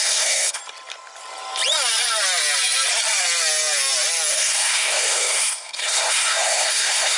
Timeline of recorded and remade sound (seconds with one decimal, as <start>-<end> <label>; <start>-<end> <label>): 0.0-0.6 remade; 0.6-4.3 recorded; 4.3-7.2 remade